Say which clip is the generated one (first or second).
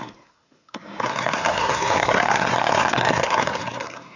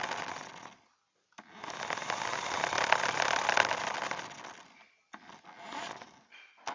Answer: first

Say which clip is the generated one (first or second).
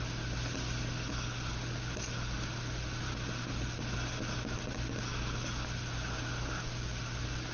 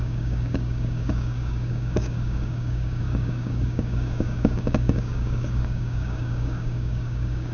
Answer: second